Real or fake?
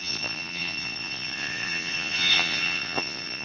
fake